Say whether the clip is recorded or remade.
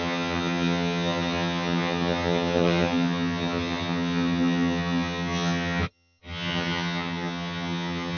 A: remade